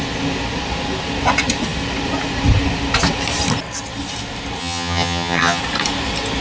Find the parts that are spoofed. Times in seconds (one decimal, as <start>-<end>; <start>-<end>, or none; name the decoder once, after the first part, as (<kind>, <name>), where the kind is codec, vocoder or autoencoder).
4.6-5.6 (vocoder, HiFi-GAN)